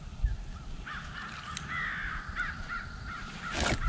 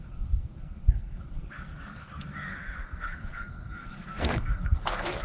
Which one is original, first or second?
first